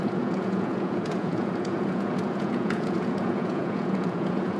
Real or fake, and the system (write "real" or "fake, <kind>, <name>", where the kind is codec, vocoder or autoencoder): fake, vocoder, Vocos